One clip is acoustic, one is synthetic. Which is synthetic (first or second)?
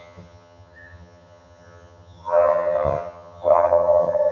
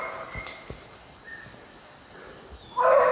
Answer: first